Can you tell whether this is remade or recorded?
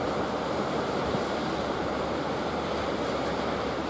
remade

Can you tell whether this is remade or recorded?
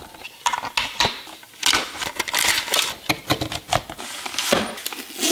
recorded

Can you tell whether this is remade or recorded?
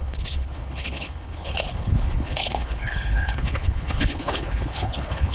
remade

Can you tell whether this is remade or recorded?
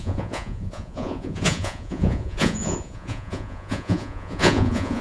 remade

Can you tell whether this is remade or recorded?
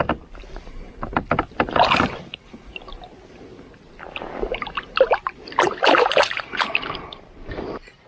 recorded